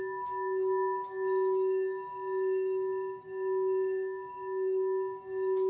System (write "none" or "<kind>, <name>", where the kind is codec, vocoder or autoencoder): codec, DAC